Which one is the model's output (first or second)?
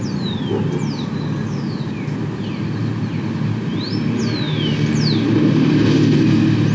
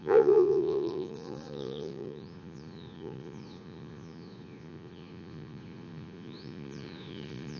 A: second